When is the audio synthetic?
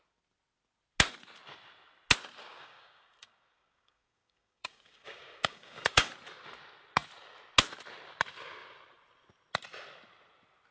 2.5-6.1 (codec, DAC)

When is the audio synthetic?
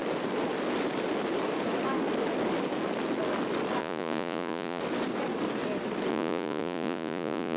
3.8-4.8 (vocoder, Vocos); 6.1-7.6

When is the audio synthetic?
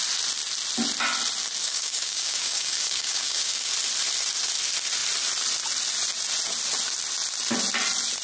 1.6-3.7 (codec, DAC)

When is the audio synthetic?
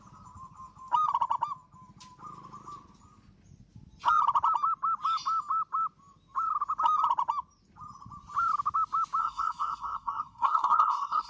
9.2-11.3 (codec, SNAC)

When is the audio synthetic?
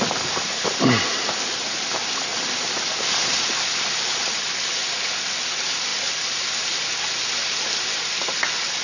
none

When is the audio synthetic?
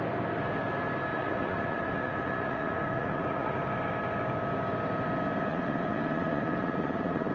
1.1-3.6 (vocoder, Vocos); 5.5-7.3